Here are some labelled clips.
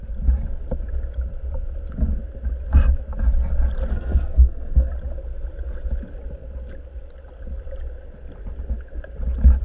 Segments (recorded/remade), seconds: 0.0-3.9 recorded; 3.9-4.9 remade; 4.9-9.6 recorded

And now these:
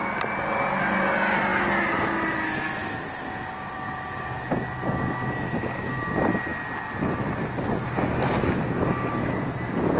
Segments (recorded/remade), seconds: 0.0-10.0 recorded

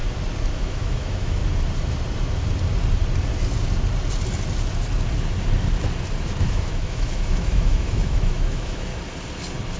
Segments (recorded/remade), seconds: 0.0-0.5 recorded; 0.5-1.4 remade; 1.4-6.4 recorded; 6.4-8.9 remade; 8.9-9.8 recorded

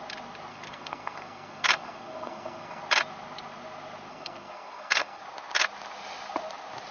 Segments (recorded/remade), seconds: 0.0-0.5 recorded; 0.5-2.8 remade; 2.8-4.1 recorded; 4.1-5.2 remade; 5.2-6.9 recorded

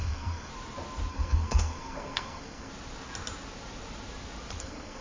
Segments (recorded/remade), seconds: 0.0-0.5 remade; 0.5-1.1 recorded; 1.1-2.7 remade; 2.7-4.6 recorded; 4.6-5.0 remade

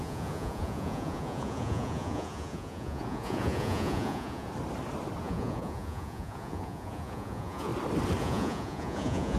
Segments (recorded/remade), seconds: 0.0-4.5 remade; 4.5-5.2 recorded; 5.2-7.7 remade; 7.7-8.2 recorded; 8.2-9.4 remade

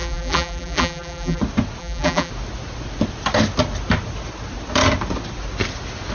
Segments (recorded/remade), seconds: 0.0-1.4 remade; 1.4-1.8 recorded; 1.8-2.3 remade; 2.3-6.1 recorded